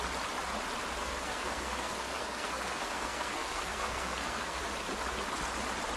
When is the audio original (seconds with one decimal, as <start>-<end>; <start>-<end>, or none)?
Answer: 0.0-1.0; 4.6-6.0